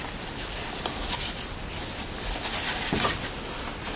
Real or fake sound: real